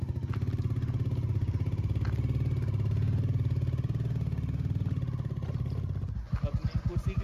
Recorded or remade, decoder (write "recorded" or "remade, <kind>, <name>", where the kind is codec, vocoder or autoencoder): recorded